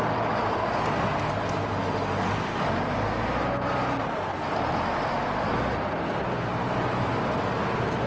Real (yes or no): yes